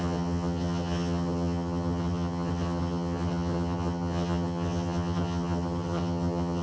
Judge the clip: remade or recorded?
remade